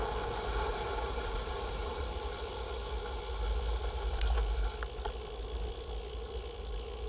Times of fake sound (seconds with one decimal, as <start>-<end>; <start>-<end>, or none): 0.7-2.0